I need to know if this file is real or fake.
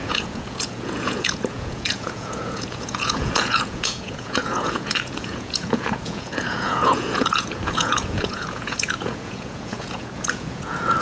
fake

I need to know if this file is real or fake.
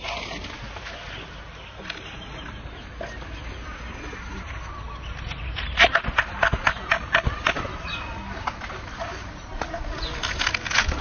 real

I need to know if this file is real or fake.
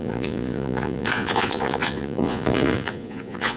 fake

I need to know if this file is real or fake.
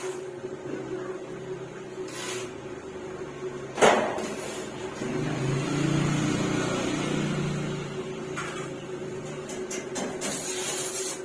real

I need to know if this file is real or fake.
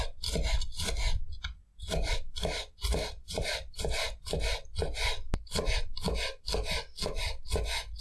real